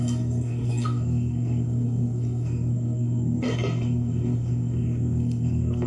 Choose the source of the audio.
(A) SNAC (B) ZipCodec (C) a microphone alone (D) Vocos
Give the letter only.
A